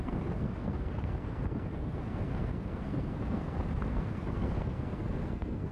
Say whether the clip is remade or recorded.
remade